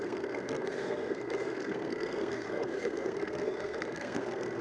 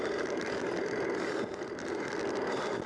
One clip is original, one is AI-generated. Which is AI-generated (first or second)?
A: first